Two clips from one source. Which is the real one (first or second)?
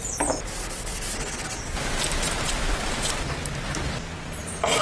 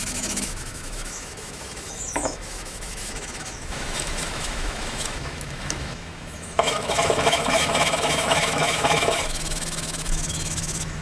first